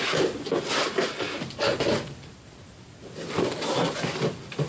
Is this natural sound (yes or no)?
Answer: yes